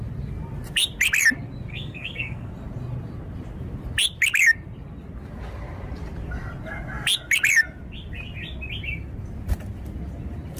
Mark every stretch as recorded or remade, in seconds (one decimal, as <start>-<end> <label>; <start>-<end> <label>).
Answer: 0.0-1.7 recorded; 1.7-2.5 remade; 2.5-10.6 recorded